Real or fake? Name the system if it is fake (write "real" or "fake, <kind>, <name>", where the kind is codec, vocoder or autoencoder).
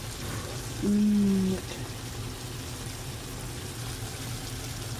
real